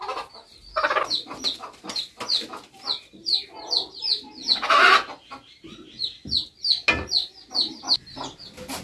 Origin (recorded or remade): recorded